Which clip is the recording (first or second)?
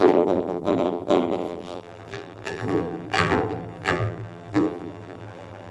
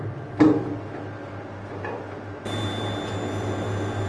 second